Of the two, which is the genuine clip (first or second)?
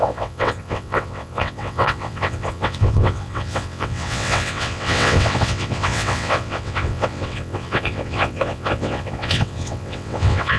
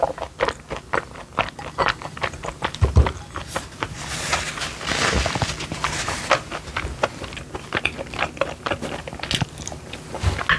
second